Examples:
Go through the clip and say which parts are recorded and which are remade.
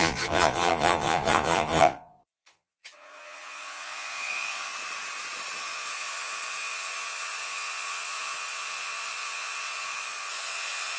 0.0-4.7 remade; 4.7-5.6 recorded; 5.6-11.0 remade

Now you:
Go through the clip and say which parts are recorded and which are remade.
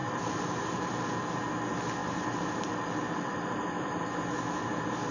0.0-1.1 remade; 1.1-2.0 recorded; 2.0-3.6 remade; 3.6-5.1 recorded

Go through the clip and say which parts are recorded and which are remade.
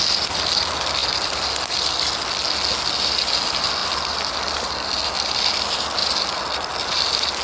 0.0-7.4 recorded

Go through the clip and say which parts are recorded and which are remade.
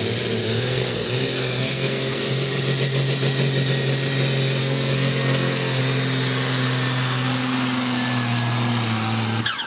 0.0-0.4 recorded; 0.4-2.2 remade; 2.2-4.6 recorded; 4.6-5.8 remade; 5.8-9.7 recorded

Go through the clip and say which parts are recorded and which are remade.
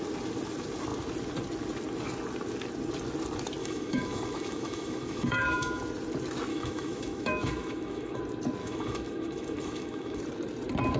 0.0-3.6 recorded; 3.6-5.8 remade; 5.8-6.5 recorded; 6.5-8.2 remade; 8.2-8.6 recorded; 8.6-10.2 remade; 10.2-11.0 recorded